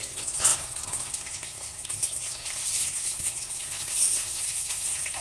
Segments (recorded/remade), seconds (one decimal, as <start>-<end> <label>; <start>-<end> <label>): 0.0-5.2 remade